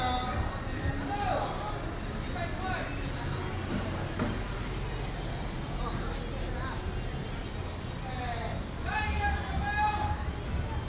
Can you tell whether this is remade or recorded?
recorded